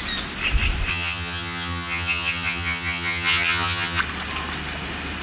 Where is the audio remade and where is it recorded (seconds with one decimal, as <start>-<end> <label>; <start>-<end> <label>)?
0.0-0.9 recorded; 0.9-4.0 remade; 4.0-5.2 recorded